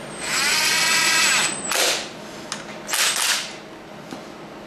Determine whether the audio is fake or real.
real